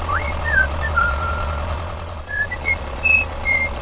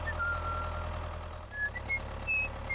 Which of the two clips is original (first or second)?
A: second